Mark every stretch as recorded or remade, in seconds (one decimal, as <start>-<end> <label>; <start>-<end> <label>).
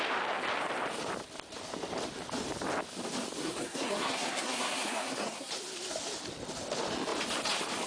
0.0-3.4 recorded; 3.4-5.5 remade; 5.5-7.9 recorded